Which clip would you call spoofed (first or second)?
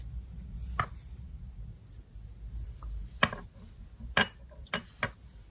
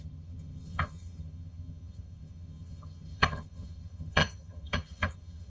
second